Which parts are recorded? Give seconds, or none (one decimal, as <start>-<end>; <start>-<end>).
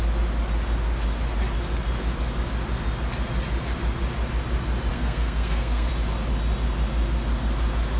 0.0-4.9; 5.9-8.0